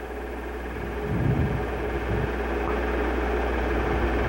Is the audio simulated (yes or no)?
no